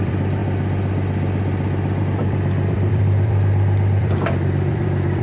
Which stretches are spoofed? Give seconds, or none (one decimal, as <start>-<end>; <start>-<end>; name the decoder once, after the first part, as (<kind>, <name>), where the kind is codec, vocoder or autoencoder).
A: 0.0-0.4 (vocoder, BigVGAN v2); 2.0-5.2